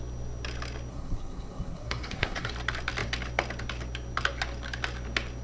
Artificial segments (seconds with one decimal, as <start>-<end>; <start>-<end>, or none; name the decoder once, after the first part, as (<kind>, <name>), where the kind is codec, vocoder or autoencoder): 0.9-2.5 (codec, SNAC)